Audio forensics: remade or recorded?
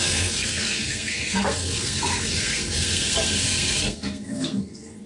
remade